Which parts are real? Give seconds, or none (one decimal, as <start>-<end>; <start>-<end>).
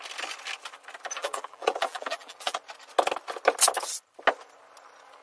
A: 0.0-1.2; 2.6-5.2